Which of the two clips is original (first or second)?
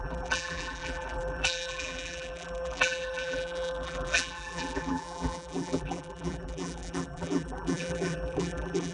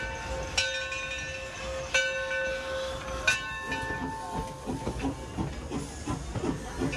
second